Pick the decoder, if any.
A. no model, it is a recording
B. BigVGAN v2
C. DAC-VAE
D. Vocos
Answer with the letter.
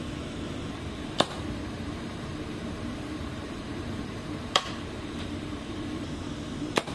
B